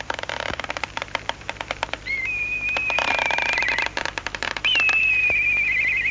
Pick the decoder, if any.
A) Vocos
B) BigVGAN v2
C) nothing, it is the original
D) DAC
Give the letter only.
B